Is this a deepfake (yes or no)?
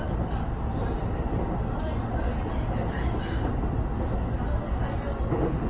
no